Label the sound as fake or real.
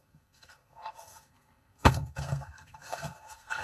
fake